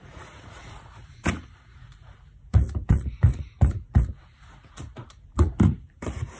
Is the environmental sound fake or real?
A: fake